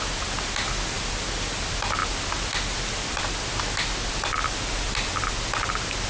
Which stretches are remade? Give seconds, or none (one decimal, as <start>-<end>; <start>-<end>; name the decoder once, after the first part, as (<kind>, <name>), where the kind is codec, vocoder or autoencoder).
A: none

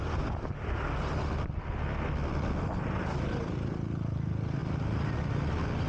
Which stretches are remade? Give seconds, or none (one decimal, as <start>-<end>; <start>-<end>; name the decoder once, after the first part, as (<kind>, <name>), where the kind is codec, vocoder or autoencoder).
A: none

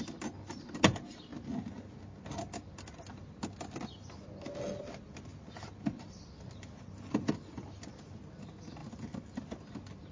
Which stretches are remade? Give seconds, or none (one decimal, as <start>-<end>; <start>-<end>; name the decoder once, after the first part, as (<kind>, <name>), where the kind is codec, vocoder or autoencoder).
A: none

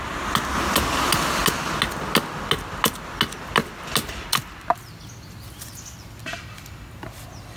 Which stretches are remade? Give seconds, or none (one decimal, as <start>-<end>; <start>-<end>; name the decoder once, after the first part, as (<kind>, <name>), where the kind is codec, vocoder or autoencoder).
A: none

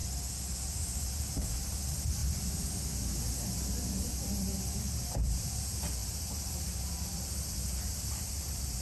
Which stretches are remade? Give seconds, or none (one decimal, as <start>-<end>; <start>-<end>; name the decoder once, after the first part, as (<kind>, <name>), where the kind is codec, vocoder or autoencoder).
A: 0.7-2.2 (vocoder, BigVGAN v2); 4.0-8.8

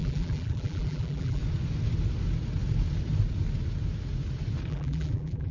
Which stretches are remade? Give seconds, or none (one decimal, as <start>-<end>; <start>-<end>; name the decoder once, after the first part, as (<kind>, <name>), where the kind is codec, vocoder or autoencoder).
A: 0.0-1.4 (vocoder, BigVGAN v2); 4.7-5.5

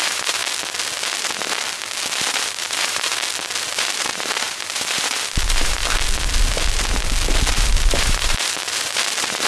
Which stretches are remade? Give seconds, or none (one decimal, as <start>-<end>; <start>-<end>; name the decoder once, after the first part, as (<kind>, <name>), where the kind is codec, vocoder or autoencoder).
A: 0.0-0.4 (vocoder, BigVGAN v2); 2.2-3.1; 3.6-5.8; 7.5-9.5